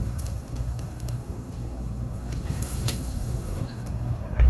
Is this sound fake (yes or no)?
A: yes